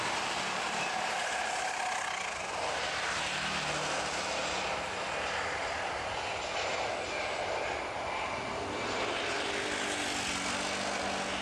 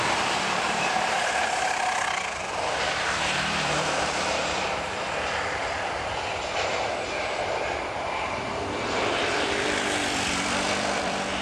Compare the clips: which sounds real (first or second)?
first